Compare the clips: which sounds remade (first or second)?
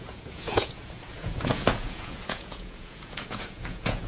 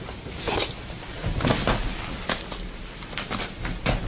first